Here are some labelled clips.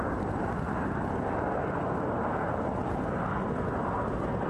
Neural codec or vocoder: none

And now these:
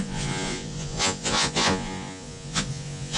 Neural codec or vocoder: vocoder, Vocos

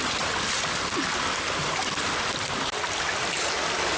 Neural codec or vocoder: none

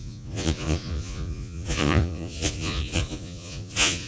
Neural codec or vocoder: vocoder, Vocos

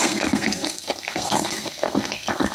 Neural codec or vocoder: codec, SNAC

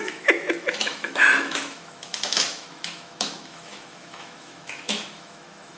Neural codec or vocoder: autoencoder, DAC-VAE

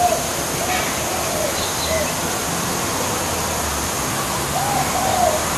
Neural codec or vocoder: none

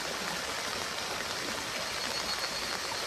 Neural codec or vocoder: none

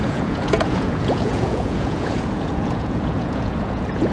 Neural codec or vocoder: vocoder, Vocos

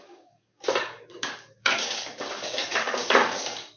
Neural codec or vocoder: codec, DAC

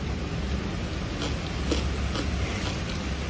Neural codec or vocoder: none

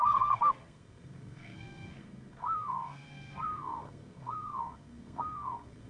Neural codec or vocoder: codec, SNAC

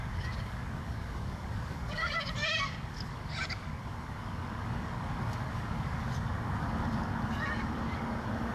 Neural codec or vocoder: codec, DAC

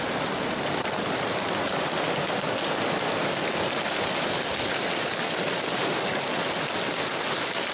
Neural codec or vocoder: none